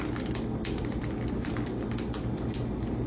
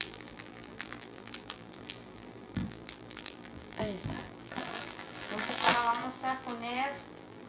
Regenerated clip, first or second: second